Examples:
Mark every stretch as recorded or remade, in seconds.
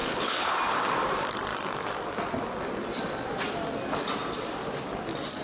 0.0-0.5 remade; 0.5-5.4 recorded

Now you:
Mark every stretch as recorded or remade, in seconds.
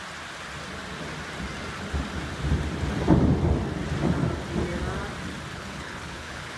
0.0-5.5 recorded; 5.5-6.6 remade